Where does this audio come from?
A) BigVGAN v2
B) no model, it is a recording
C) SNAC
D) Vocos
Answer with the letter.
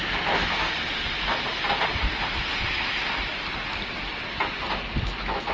B